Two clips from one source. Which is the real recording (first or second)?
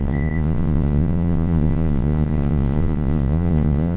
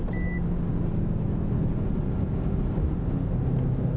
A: second